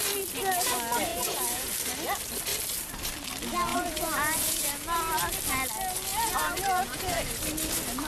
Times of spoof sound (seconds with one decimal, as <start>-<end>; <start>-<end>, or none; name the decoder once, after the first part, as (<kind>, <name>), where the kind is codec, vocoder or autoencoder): 1.1-1.7 (vocoder, Vocos); 3.7-5.1; 6.1-7.4